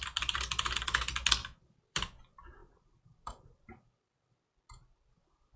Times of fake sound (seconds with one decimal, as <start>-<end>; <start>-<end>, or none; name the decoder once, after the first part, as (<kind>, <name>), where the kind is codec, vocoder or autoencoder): 1.4-2.2 (vocoder, BigVGAN v2); 2.6-4.5